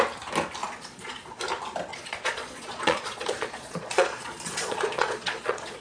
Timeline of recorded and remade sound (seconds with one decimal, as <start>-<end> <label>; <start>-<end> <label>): 0.0-0.6 recorded; 0.6-1.4 remade; 1.4-1.9 recorded; 1.9-5.8 remade